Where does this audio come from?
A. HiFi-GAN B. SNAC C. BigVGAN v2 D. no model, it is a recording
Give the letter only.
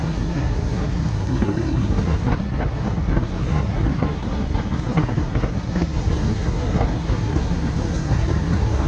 B